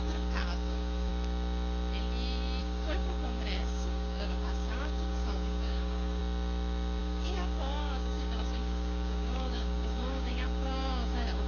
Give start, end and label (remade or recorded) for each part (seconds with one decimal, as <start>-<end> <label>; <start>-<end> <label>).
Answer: 0.0-1.1 remade; 1.1-2.6 recorded; 2.6-6.2 remade; 6.2-7.0 recorded; 7.0-11.5 remade